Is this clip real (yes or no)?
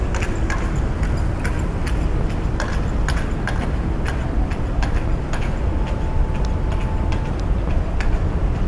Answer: yes